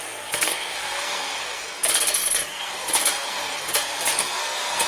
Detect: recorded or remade remade